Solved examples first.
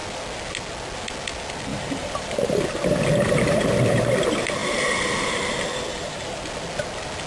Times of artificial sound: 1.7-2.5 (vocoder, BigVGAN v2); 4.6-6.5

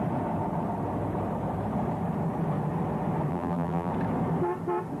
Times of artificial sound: 3.3-3.9 (vocoder, BigVGAN v2)

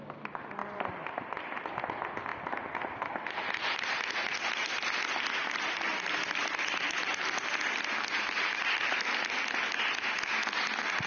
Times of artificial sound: 0.6-1.7 (vocoder, BigVGAN v2); 2.3-6.6